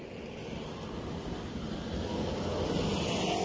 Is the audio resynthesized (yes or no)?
no